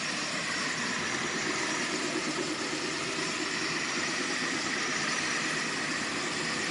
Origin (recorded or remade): recorded